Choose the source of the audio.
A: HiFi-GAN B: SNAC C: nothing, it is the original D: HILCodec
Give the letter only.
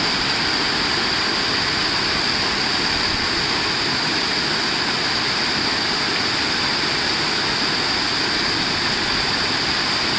C